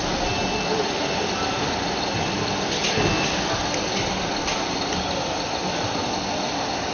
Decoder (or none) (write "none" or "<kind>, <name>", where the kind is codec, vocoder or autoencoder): none